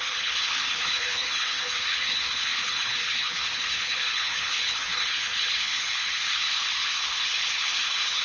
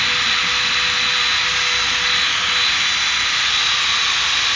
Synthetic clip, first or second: first